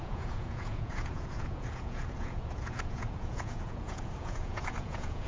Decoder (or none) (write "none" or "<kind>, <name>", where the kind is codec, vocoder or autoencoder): vocoder, Vocos